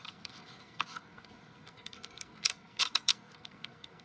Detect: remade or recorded remade